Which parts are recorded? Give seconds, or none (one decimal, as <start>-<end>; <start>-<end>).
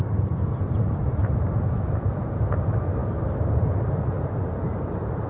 0.0-1.2; 2.2-5.3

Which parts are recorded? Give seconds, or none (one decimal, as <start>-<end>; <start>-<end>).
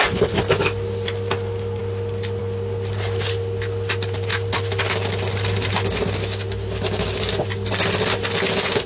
0.0-8.9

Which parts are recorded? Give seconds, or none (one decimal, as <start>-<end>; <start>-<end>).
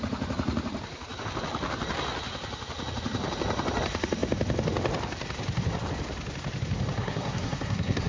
0.0-7.0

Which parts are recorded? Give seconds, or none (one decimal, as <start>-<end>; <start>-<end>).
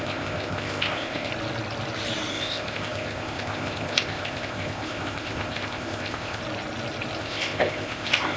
1.3-2.3; 6.4-7.2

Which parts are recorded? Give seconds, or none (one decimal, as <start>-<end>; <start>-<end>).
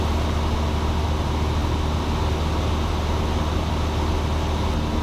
0.0-5.0